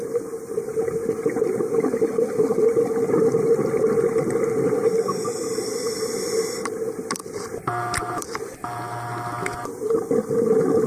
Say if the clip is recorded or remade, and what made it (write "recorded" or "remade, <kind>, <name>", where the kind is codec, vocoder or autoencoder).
recorded